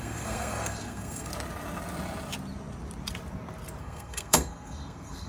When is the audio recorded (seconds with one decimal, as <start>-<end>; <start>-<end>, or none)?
1.3-3.8